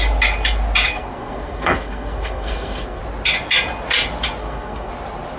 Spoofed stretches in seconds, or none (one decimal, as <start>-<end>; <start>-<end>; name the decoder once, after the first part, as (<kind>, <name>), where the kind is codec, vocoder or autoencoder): 0.9-3.0 (codec, SNAC); 4.4-4.9